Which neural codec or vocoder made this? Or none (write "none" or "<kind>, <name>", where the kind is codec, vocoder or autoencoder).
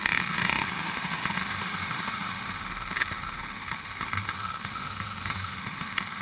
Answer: autoencoder, DAC-VAE